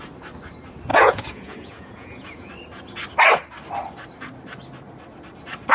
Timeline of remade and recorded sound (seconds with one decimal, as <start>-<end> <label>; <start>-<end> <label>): 0.0-0.9 recorded; 0.9-2.5 remade; 2.5-5.7 recorded